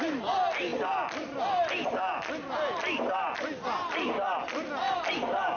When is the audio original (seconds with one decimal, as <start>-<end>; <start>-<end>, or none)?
0.0-5.6